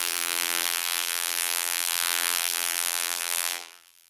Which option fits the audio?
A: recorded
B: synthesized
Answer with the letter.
B